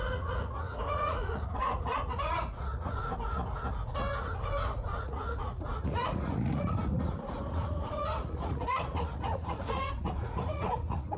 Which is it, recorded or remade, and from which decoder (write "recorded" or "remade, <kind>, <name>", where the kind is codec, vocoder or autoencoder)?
remade, vocoder, Vocos